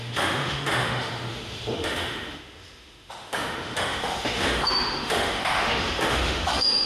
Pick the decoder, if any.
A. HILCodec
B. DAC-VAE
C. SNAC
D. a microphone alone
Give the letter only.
B